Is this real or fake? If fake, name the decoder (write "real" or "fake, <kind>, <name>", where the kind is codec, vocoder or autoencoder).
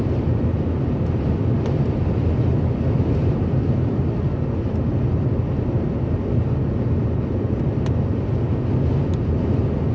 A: real